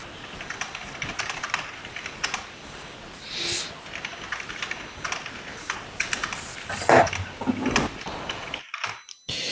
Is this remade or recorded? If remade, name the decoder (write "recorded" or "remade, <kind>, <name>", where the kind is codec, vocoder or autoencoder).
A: recorded